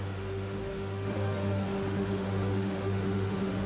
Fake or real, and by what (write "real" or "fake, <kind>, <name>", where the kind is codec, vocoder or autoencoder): fake, autoencoder, DAC-VAE